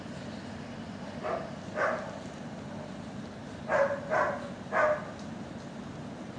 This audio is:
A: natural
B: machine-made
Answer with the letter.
A